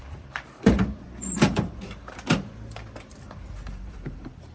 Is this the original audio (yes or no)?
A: no